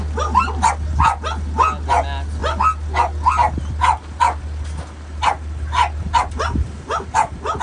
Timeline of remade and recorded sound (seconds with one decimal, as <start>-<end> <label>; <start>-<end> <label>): 0.0-7.6 recorded